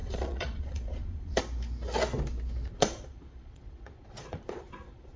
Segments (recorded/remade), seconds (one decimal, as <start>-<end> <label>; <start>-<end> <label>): 0.0-1.4 remade; 1.4-2.7 recorded; 2.7-5.2 remade